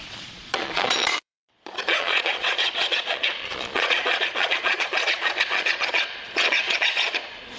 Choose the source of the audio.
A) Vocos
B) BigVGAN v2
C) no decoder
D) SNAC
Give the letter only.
A